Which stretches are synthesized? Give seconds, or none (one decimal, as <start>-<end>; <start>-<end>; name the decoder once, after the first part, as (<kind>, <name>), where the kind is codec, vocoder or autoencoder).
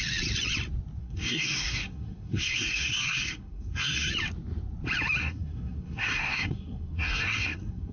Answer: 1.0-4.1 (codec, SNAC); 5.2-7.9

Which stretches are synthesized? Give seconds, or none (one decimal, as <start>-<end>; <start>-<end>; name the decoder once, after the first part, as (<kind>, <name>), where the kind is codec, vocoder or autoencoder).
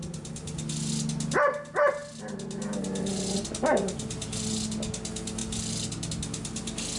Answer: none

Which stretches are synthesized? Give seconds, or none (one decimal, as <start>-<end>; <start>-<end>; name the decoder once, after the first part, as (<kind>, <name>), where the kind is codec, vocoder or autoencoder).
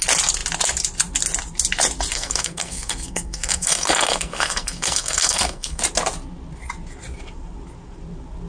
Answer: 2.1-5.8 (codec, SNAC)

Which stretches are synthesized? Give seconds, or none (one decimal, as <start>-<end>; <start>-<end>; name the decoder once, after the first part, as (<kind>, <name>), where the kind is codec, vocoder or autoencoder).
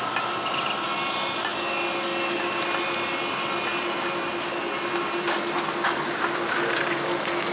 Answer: none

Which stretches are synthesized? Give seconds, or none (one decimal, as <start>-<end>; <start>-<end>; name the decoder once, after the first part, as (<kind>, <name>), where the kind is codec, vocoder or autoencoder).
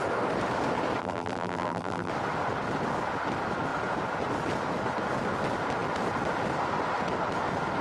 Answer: 1.0-2.1 (vocoder, BigVGAN v2)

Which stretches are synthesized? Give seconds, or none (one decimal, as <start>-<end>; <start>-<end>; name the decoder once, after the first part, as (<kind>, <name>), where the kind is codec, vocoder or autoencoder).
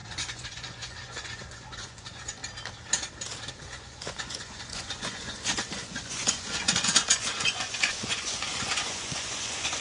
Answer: 0.0-2.4 (vocoder, Vocos); 3.5-9.8